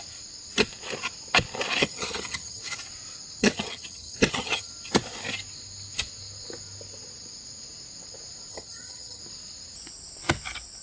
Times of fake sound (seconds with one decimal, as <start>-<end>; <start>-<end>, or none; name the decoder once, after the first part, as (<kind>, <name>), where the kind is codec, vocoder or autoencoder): 1.8-2.6 (vocoder, HiFi-GAN); 3.4-4.7; 8.5-9.2